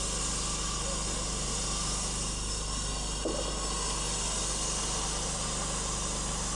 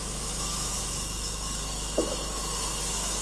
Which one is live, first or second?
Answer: first